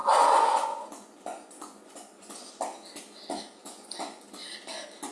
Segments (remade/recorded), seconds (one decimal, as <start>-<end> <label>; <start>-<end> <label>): 0.0-2.5 remade; 2.5-3.6 recorded; 3.6-4.2 remade; 4.2-5.1 recorded